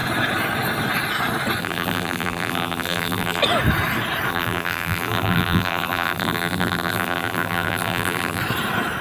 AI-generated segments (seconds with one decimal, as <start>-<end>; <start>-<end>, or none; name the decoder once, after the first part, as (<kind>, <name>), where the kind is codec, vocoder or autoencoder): 1.6-3.4 (vocoder, BigVGAN v2); 4.3-8.4